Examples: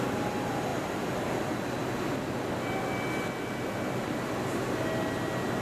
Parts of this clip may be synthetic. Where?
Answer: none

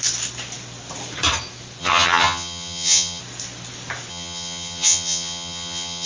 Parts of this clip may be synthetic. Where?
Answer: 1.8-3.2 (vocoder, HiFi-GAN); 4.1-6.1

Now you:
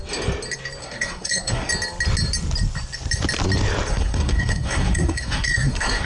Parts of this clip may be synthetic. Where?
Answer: 0.8-1.7 (codec, SNAC); 3.9-6.1